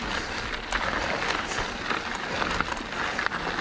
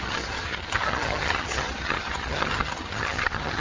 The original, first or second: first